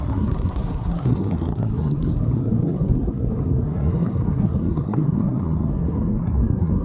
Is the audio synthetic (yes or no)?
yes